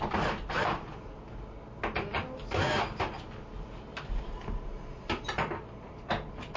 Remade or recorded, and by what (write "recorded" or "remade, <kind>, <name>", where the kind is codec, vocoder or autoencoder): recorded